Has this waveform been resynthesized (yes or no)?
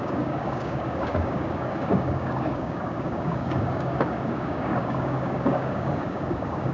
yes